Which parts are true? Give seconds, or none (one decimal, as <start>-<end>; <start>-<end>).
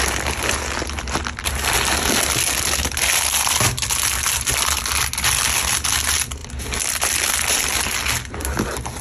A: 0.0-9.0